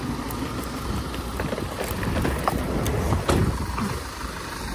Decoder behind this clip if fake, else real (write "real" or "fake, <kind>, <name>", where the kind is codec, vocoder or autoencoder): real